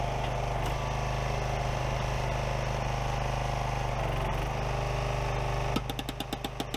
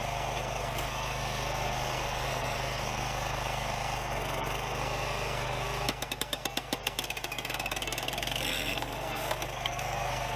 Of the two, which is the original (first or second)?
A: first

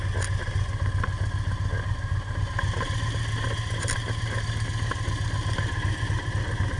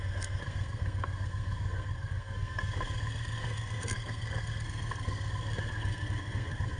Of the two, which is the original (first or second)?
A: first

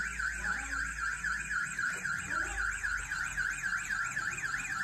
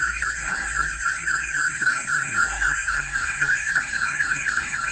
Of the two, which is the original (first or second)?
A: first